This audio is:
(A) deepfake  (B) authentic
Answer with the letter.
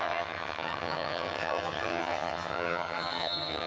A